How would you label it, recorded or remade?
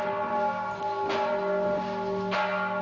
recorded